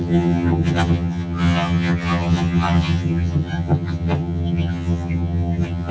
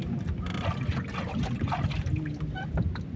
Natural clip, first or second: second